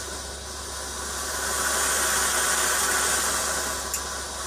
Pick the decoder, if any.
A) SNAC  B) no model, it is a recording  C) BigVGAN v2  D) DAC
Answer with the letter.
B